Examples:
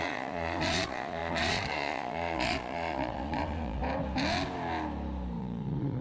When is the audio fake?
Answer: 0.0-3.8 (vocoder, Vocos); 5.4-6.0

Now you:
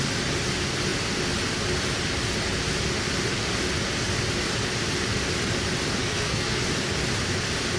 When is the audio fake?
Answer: 6.0-6.6 (codec, SNAC)

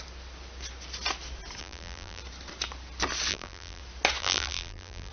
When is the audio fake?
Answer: 1.6-2.2 (vocoder, BigVGAN v2); 3.3-3.8; 4.2-5.1